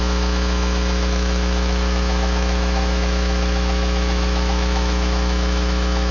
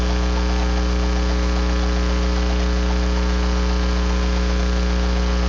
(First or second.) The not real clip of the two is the first